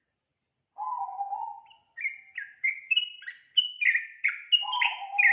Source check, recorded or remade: recorded